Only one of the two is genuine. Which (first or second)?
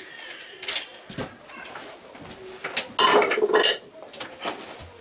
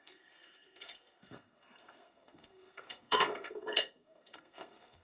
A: first